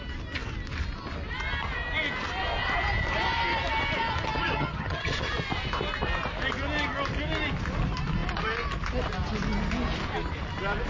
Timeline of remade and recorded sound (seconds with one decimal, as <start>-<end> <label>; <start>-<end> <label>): 0.0-4.4 recorded; 4.4-5.3 remade; 5.3-10.9 recorded